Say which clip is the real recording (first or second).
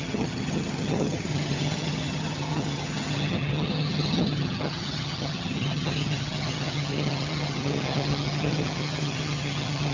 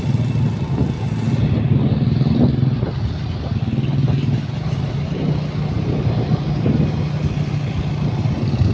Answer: second